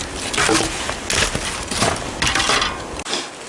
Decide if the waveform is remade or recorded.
recorded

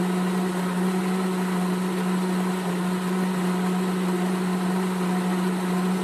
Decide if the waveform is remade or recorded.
recorded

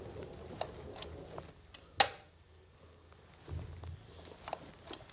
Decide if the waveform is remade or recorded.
recorded